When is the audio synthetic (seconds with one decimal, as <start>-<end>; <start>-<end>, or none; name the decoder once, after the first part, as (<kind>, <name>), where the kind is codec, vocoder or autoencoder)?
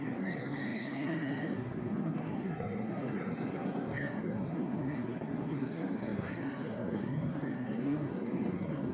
0.0-8.9 (codec, SNAC)